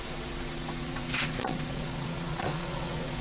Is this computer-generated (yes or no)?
yes